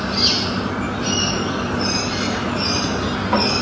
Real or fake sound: real